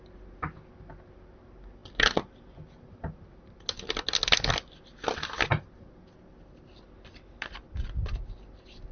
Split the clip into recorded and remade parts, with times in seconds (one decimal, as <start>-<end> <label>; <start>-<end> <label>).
0.0-8.9 recorded